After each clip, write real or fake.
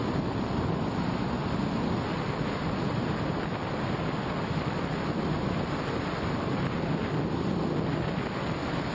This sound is real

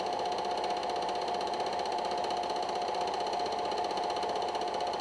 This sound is real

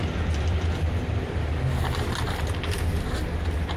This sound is real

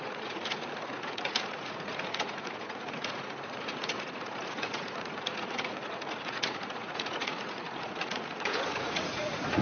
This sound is fake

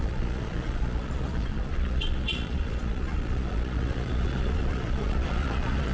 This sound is fake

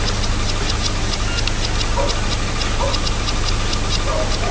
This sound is real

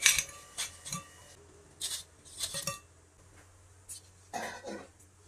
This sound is real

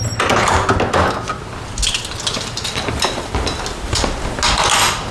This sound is real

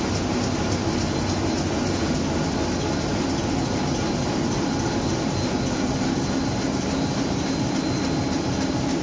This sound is real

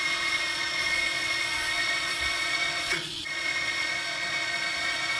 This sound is fake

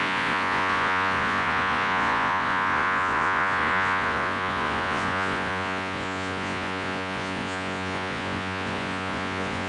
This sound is fake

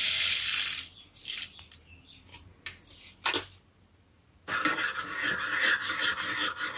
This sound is real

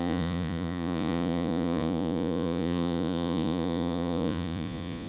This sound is fake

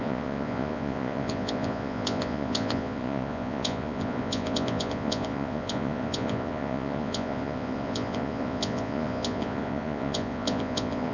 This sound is fake